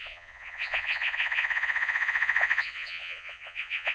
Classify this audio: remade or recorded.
remade